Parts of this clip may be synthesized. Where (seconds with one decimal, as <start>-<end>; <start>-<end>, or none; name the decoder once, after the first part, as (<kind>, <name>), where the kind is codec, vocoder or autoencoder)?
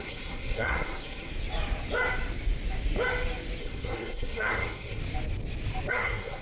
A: 0.0-1.3 (codec, SNAC); 3.6-5.0; 5.9-6.4